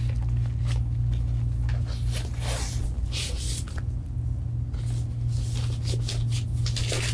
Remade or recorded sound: recorded